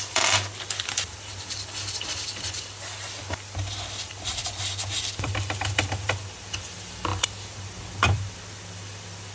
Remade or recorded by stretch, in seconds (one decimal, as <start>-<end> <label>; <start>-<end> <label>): 0.0-9.3 remade